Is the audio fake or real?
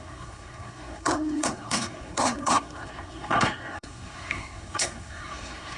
fake